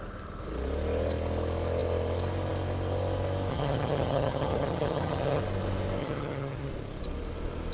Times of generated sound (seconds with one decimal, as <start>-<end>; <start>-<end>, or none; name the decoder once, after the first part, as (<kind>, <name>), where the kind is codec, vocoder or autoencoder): 3.5-5.4 (vocoder, HiFi-GAN); 6.0-6.7